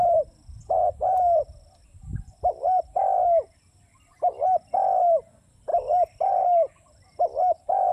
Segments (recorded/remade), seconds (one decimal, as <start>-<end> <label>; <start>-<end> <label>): 0.0-2.1 recorded; 2.1-2.8 remade; 2.8-5.7 recorded; 5.7-6.7 remade; 6.7-7.9 recorded